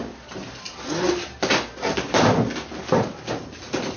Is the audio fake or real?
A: real